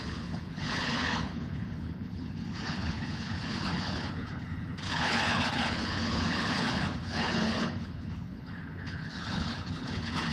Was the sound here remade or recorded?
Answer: remade